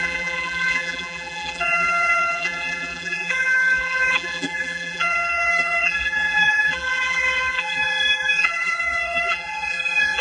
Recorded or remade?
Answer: remade